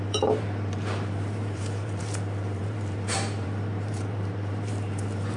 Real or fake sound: fake